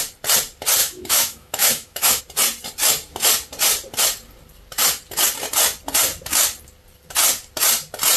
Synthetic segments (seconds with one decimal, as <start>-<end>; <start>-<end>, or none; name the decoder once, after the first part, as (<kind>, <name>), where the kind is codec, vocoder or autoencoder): 0.8-2.2 (autoencoder, DAC-VAE)